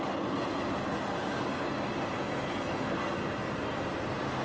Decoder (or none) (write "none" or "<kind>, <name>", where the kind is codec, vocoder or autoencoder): none